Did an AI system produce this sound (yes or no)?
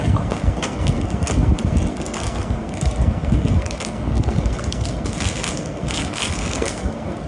yes